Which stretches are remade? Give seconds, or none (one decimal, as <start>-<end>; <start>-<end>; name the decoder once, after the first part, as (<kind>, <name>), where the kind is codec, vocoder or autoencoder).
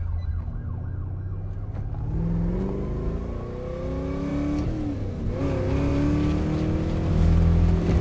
none